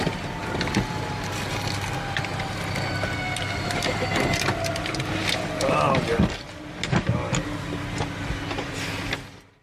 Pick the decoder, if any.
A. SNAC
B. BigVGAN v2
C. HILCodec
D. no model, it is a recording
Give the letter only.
D